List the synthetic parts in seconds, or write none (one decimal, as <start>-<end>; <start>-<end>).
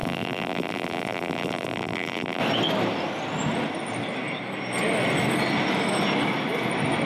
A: 0.0-2.4